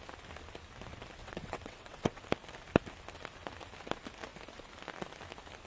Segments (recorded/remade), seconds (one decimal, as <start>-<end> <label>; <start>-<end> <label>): 0.0-1.2 recorded; 1.2-2.2 remade; 2.2-5.7 recorded

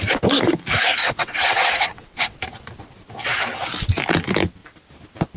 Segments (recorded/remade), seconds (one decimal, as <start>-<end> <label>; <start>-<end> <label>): 0.0-1.0 recorded; 1.0-2.4 remade; 2.4-5.4 recorded